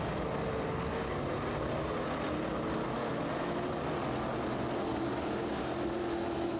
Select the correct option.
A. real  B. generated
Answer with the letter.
A